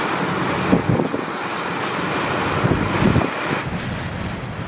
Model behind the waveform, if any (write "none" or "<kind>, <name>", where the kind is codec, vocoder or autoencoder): none